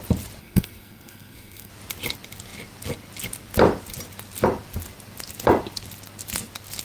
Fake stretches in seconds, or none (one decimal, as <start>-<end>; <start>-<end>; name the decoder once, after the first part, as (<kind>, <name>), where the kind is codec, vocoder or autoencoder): 0.4-1.7 (codec, SNAC)